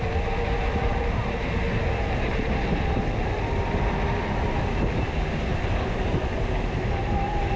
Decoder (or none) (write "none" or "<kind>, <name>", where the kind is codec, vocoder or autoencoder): none